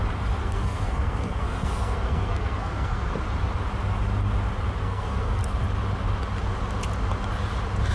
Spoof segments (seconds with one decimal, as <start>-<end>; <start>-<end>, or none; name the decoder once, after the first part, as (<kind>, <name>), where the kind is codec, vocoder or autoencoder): 0.4-3.1 (codec, SNAC); 4.8-5.4

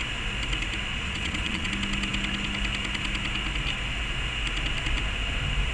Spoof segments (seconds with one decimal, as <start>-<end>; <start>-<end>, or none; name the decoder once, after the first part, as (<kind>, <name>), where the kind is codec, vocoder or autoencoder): 0.9-1.7 (vocoder, Vocos)

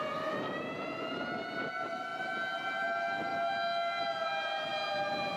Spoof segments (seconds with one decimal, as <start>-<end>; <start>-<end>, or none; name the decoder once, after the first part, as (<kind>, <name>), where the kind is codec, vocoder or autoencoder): none

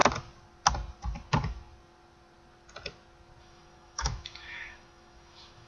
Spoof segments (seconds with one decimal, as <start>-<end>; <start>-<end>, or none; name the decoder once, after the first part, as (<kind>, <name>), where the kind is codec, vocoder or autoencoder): 3.4-5.7 (autoencoder, DAC-VAE)